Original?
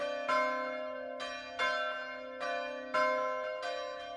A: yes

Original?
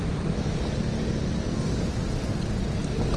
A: yes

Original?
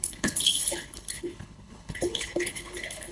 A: no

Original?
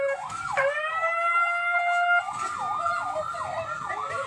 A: yes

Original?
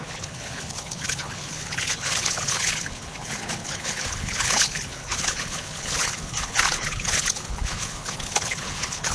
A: no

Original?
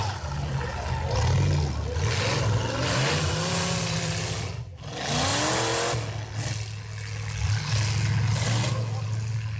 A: yes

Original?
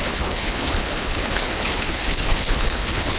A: no